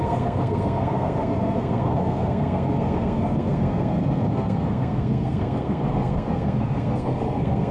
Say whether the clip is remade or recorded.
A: remade